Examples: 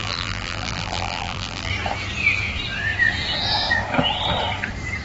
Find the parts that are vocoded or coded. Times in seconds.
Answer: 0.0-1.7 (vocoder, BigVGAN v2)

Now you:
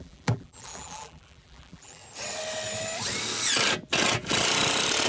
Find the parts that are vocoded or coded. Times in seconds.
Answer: 0.0-2.0 (vocoder, BigVGAN v2)

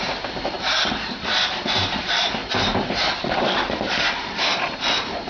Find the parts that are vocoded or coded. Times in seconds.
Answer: 0.0-5.3 (vocoder, BigVGAN v2)

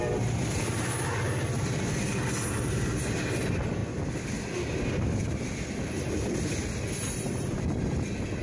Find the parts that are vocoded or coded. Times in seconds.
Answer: 0.0-0.7 (vocoder, BigVGAN v2)

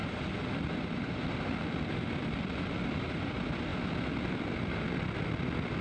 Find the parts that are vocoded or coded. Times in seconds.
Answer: 0.0-2.7 (vocoder, BigVGAN v2)

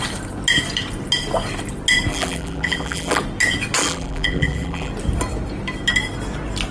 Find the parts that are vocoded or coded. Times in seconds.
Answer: 2.1-3.2 (vocoder, BigVGAN v2); 3.8-4.9